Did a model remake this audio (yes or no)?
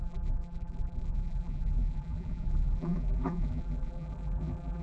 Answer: yes